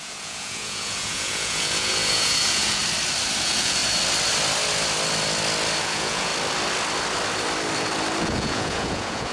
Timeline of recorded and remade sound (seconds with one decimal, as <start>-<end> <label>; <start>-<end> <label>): 0.0-2.8 remade; 2.8-3.4 recorded; 3.4-3.8 remade; 3.8-5.8 recorded; 5.8-6.3 remade; 6.3-8.2 recorded; 8.2-9.3 remade